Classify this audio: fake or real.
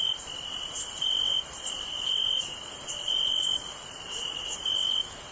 real